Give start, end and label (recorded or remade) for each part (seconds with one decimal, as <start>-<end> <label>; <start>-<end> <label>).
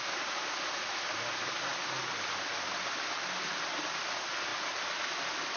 0.0-5.6 recorded